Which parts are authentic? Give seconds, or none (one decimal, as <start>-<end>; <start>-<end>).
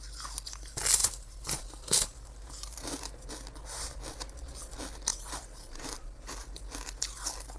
0.0-1.0; 3.3-5.1; 6.6-7.6